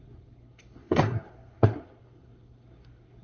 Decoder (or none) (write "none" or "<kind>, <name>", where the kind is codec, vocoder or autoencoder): codec, SNAC